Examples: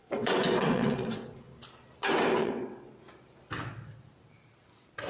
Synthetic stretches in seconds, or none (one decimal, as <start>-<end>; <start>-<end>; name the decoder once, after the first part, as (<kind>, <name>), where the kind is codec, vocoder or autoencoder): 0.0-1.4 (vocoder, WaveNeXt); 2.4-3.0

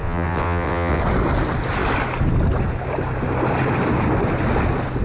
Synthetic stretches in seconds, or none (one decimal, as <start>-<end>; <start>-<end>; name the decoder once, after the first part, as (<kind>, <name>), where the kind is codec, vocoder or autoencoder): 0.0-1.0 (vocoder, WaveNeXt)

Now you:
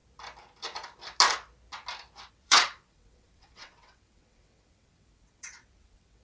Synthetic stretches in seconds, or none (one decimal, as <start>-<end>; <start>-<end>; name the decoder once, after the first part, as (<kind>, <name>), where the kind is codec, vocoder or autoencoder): 2.3-6.2 (vocoder, WaveNeXt)

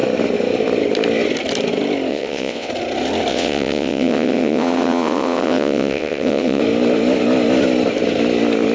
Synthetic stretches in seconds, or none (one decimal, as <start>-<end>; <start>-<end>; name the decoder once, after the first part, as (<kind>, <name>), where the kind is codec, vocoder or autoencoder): 2.1-2.7 (vocoder, WaveNeXt); 3.3-6.6